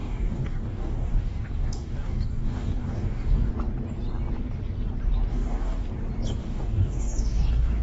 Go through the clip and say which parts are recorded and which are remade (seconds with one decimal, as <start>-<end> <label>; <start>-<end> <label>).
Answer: 0.0-3.5 remade; 3.5-5.3 recorded; 5.3-5.9 remade; 5.9-6.4 recorded; 6.4-7.8 remade